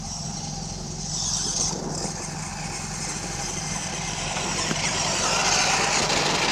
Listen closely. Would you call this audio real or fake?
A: fake